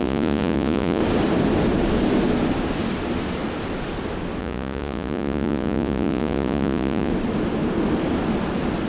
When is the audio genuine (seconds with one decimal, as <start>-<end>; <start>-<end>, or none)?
1.0-4.4; 7.1-8.9

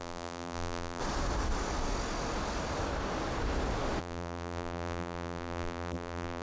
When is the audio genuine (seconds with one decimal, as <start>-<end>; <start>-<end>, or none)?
1.0-4.0

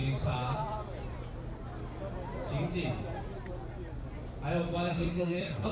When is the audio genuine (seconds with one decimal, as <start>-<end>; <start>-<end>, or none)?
0.0-4.9

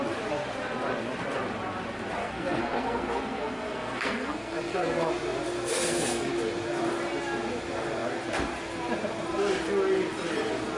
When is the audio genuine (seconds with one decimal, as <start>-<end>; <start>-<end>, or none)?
0.0-2.2; 5.1-5.7; 6.3-10.8

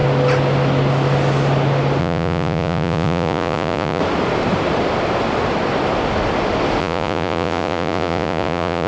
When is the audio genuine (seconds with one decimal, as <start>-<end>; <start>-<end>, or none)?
0.0-2.0; 4.0-6.8

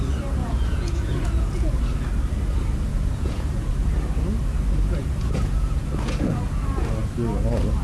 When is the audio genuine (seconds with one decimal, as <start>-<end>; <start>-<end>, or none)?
0.0-0.4; 1.8-2.9; 3.9-5.0; 6.5-7.8

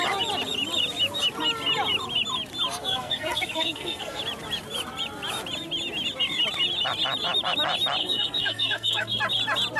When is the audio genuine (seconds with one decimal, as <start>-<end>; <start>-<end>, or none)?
0.0-2.8; 4.2-8.0; 9.2-9.8

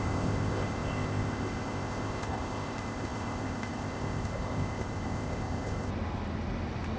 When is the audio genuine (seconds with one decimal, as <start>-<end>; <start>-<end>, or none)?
5.9-7.0